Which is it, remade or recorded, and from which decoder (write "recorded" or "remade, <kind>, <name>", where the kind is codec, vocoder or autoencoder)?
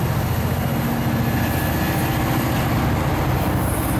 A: recorded